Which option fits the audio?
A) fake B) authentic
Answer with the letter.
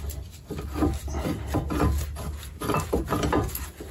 B